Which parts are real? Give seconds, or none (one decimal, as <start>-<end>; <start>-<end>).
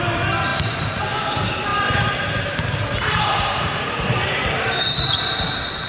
0.0-0.5; 1.0-1.7; 5.2-5.9